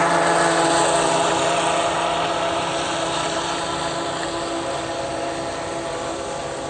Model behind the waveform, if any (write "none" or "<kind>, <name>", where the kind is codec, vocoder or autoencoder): none